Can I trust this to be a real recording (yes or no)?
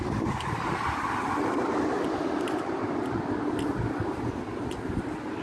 yes